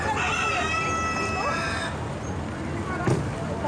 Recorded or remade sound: recorded